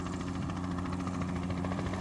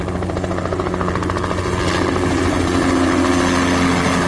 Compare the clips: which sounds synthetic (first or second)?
first